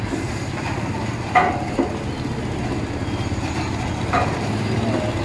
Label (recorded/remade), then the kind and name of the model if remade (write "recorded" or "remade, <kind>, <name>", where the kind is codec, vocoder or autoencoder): recorded